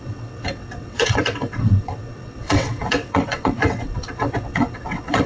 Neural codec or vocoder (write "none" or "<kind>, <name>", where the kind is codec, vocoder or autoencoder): vocoder, WaveNeXt